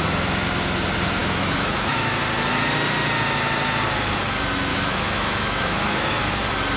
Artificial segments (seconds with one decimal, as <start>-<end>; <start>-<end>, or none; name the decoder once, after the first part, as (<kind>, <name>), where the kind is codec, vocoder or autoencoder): 1.2-2.2 (autoencoder, DAC-VAE); 4.7-6.2